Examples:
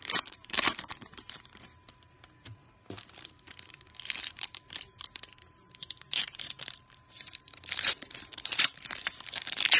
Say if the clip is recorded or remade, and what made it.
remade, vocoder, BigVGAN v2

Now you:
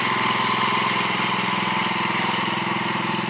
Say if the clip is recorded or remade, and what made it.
recorded